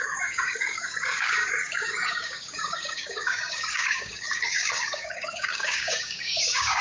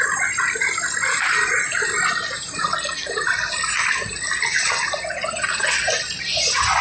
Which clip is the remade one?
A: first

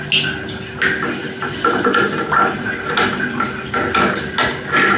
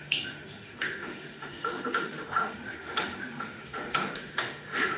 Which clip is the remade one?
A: second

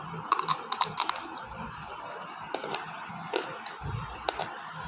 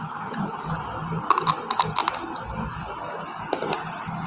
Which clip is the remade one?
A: first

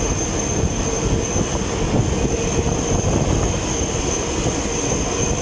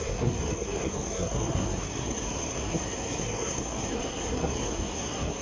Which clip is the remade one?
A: second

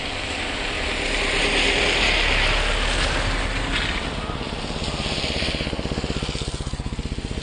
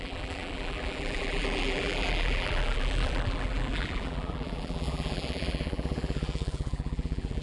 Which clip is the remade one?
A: second